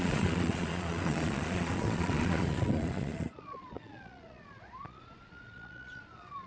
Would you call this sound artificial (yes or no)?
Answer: yes